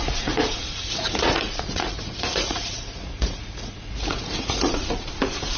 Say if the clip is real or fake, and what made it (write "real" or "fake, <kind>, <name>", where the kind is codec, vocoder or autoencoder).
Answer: fake, vocoder, Vocos